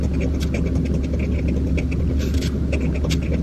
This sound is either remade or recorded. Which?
recorded